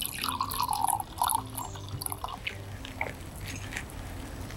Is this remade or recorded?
recorded